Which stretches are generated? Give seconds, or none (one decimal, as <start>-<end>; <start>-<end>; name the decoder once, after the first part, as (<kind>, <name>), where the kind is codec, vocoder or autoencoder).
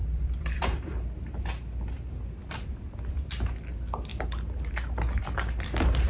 0.0-2.9 (vocoder, BigVGAN v2); 4.1-6.1